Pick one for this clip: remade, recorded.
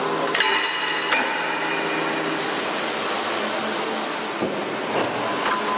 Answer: recorded